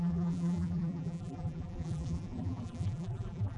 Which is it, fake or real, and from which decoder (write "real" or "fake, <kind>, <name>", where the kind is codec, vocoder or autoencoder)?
fake, vocoder, BigVGAN v2